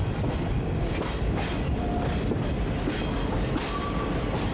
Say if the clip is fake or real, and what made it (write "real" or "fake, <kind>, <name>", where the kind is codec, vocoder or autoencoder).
real